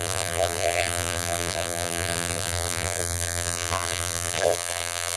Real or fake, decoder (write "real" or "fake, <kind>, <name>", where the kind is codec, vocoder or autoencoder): fake, vocoder, BigVGAN v2